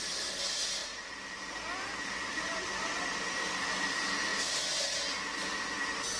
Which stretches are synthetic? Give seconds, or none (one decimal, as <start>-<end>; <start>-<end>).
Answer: 0.8-1.4; 2.3-3.6